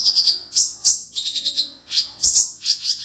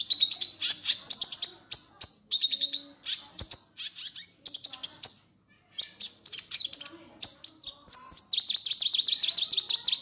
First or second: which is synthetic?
first